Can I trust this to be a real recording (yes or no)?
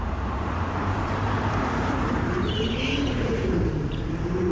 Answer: no